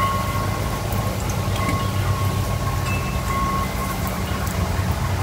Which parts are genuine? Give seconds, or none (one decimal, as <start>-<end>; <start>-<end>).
0.0-3.8; 4.8-5.2